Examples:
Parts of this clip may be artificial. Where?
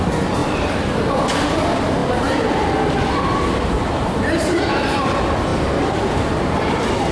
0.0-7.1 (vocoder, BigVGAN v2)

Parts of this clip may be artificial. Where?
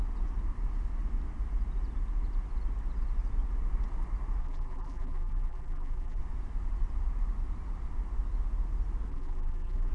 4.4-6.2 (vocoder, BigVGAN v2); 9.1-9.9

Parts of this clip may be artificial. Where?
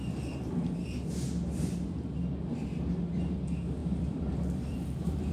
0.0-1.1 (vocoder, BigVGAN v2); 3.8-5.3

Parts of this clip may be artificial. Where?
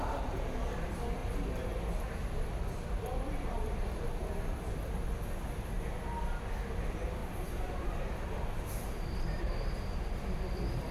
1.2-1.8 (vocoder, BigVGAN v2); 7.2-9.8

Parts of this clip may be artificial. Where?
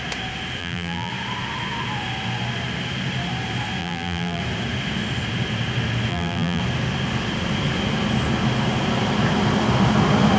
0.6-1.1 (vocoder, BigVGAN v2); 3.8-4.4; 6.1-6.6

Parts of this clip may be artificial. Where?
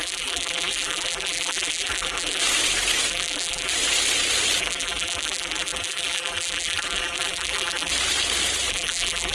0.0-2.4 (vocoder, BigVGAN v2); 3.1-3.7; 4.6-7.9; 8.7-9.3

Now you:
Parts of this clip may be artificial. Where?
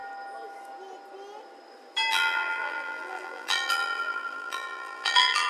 2.1-5.5 (vocoder, BigVGAN v2)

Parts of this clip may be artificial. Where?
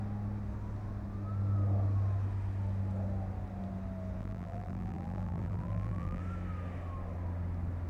4.2-6.2 (vocoder, BigVGAN v2)